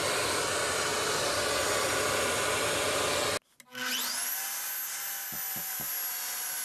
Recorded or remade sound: recorded